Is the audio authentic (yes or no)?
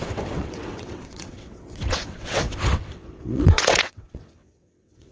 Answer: no